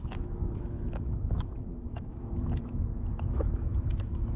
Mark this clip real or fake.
fake